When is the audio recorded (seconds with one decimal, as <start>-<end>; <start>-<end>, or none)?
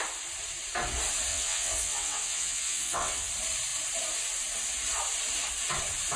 0.0-1.3; 3.3-6.2